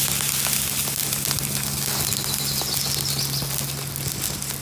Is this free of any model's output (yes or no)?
yes